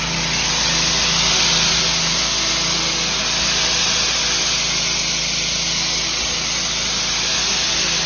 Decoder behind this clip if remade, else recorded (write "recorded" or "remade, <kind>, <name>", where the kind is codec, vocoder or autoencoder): recorded